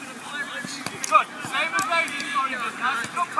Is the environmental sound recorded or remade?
recorded